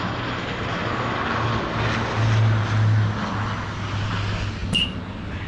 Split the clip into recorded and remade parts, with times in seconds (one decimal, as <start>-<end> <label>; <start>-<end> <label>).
0.0-5.5 recorded